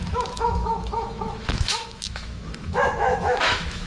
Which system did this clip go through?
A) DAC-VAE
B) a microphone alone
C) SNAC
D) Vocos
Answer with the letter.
A